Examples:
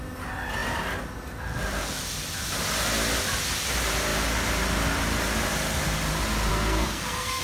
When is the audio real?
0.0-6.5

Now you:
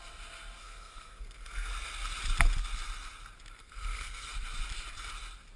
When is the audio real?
0.0-0.6; 1.7-3.6; 4.3-5.6

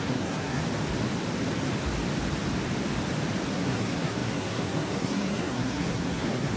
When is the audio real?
0.6-3.5

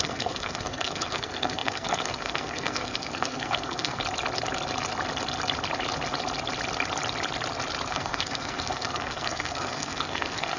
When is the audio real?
4.0-7.9

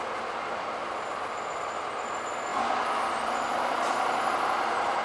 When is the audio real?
0.0-5.0

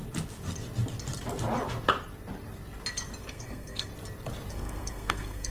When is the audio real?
0.0-3.3; 3.9-4.5

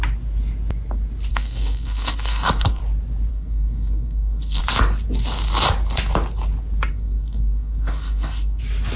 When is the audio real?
0.0-1.3; 2.8-3.3; 4.6-6.9; 8.6-9.0

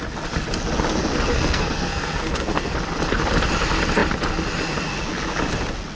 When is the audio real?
0.0-1.3; 2.7-5.9